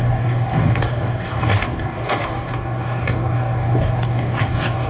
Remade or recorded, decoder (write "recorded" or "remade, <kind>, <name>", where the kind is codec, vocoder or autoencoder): remade, codec, DAC